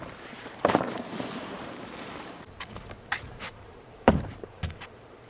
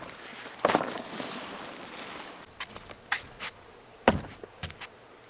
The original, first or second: second